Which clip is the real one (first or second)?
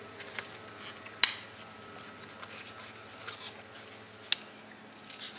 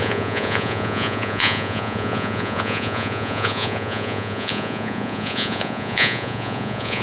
first